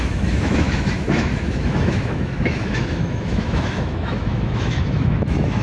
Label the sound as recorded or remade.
remade